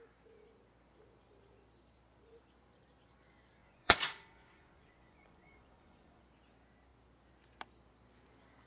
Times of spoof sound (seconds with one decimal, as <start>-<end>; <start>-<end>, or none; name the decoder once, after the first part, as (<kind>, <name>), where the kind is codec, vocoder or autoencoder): 3.6-6.2 (vocoder, Vocos)